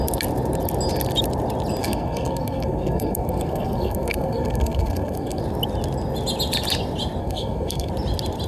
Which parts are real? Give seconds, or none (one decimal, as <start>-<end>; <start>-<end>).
0.0-1.8; 5.4-7.2; 7.9-8.5